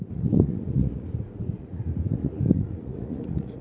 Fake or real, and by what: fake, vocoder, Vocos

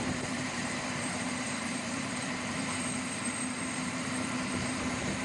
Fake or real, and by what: fake, vocoder, BigVGAN v2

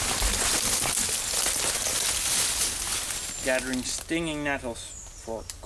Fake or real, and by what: real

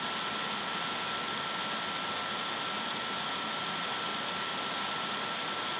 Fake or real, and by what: real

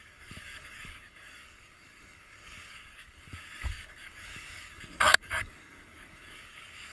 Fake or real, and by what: fake, codec, DAC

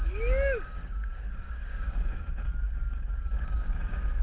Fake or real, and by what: fake, codec, DAC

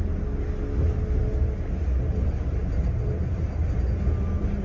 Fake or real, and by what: real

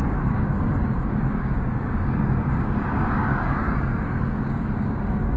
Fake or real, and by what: fake, codec, DAC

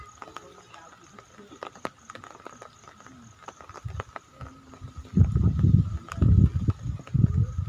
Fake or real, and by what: real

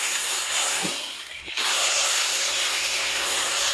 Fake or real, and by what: fake, codec, SNAC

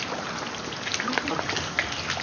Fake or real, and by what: real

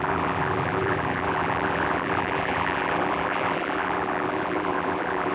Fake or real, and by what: fake, vocoder, BigVGAN v2